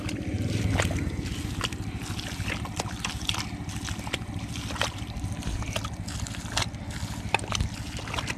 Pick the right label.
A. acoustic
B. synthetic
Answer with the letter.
A